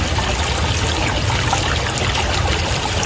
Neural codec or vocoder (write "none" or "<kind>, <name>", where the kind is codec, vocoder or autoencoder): none